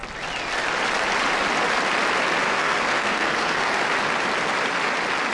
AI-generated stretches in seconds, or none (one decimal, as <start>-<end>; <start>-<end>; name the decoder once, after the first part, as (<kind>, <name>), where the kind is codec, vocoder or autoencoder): 2.5-3.8 (codec, SNAC)